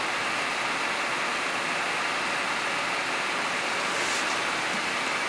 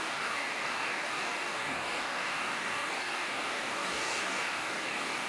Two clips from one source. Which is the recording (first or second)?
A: first